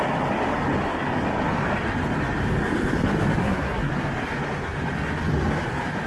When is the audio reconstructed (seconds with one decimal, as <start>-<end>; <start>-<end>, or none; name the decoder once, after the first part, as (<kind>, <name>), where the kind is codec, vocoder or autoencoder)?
3.4-3.9 (codec, SNAC)